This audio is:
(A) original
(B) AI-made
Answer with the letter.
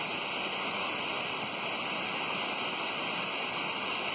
A